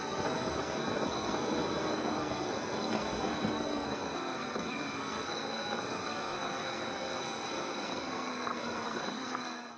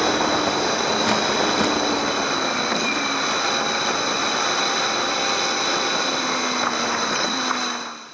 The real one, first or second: second